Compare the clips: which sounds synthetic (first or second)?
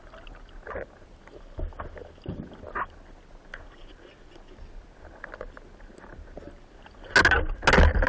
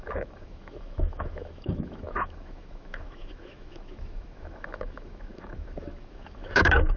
second